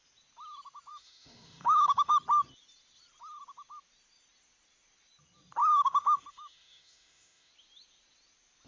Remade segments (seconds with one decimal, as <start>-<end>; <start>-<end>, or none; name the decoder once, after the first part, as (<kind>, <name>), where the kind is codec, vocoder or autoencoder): 0.9-2.1 (autoencoder, DAC-VAE); 5.6-7.5